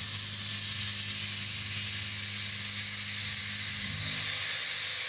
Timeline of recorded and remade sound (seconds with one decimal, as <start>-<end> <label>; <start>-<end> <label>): 0.0-5.1 recorded